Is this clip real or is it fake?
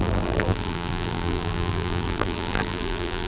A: fake